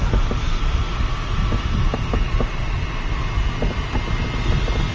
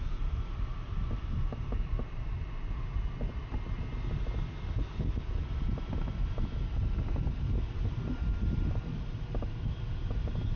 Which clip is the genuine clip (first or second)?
first